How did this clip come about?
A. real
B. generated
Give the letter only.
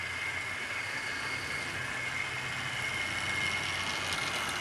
A